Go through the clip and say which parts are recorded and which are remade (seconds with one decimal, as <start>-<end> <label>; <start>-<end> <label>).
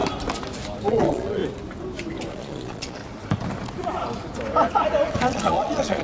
0.0-0.9 recorded; 0.9-1.4 remade; 1.4-2.3 recorded; 2.3-3.0 remade; 3.0-5.1 recorded; 5.1-6.0 remade